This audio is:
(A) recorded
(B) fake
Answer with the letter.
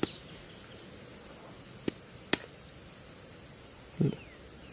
A